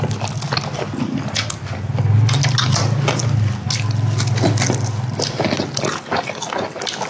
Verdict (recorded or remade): recorded